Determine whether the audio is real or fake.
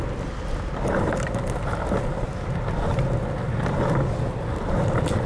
real